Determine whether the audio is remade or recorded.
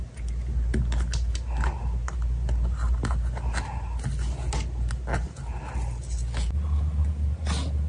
recorded